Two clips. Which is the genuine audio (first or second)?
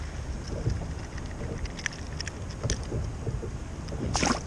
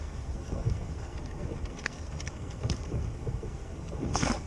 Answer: first